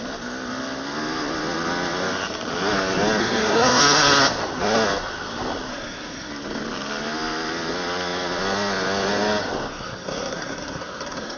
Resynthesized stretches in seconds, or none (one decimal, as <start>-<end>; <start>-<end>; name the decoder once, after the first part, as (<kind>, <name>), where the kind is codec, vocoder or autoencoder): 3.2-3.8 (codec, SNAC); 5.7-6.3; 9.7-11.4